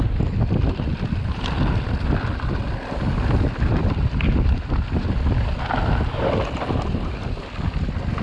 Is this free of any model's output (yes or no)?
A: yes